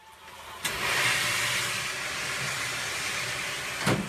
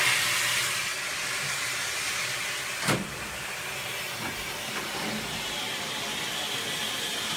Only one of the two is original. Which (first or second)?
second